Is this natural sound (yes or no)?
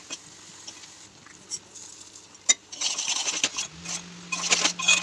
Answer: yes